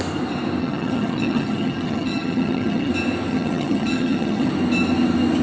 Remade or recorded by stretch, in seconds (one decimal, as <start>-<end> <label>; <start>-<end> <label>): 0.0-0.6 recorded; 0.6-2.9 remade; 2.9-3.3 recorded; 3.3-4.5 remade; 4.5-5.4 recorded